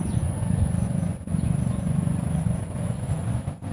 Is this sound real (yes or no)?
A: no